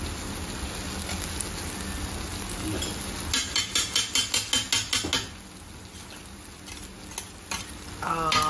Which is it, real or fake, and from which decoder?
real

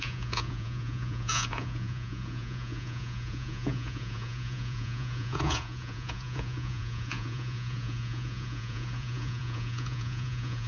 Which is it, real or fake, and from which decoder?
fake, vocoder, Vocos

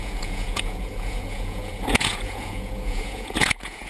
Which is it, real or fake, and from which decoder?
fake, vocoder, Vocos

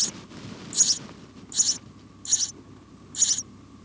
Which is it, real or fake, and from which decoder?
real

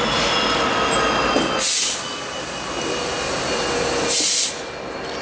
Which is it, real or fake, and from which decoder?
real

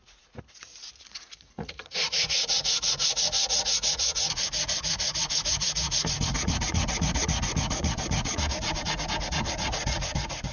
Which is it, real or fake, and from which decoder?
fake, vocoder, Vocos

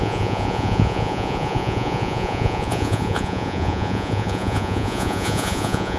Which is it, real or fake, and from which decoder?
fake, vocoder, Vocos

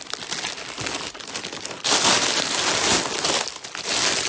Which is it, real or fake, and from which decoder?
real